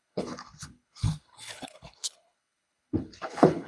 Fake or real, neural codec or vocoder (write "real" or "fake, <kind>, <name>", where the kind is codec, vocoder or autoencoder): fake, codec, HILCodec